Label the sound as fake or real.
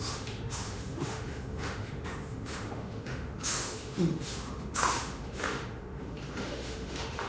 fake